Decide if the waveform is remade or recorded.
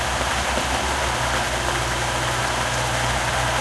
recorded